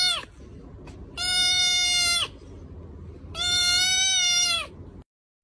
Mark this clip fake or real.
real